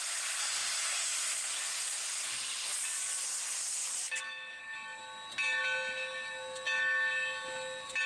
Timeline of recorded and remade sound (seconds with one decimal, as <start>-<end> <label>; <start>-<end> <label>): 0.0-8.1 recorded